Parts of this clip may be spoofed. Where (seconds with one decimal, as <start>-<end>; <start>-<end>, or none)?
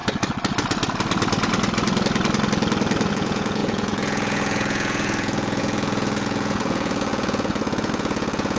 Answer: 3.1-8.6